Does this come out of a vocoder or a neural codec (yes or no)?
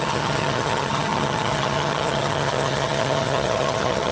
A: yes